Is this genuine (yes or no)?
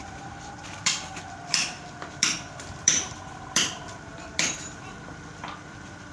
no